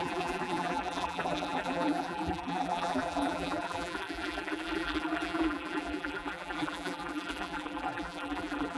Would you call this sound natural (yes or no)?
no